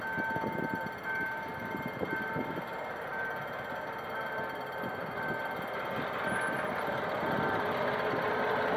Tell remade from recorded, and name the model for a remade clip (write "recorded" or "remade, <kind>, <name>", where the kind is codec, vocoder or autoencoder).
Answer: recorded